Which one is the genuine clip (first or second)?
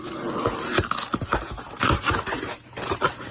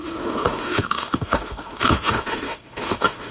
first